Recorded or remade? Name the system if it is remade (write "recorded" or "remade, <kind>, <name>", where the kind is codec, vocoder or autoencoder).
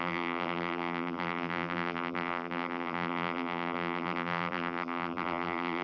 remade, vocoder, BigVGAN v2